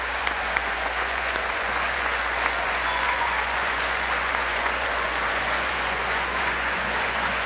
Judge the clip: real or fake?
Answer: fake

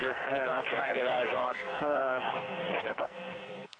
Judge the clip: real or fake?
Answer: fake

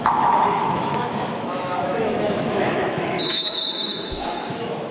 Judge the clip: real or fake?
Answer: fake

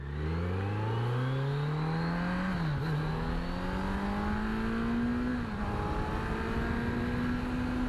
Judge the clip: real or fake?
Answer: real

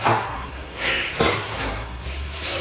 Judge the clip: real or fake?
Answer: fake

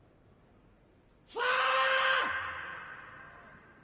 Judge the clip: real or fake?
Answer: real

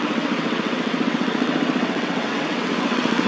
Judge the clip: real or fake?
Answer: fake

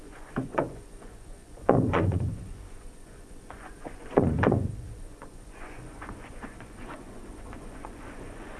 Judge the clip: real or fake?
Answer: fake